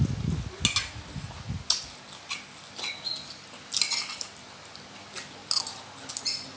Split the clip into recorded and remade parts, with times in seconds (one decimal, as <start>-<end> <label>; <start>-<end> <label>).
0.0-6.6 recorded